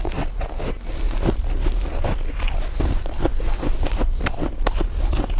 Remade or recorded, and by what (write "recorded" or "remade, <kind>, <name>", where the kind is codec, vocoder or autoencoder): recorded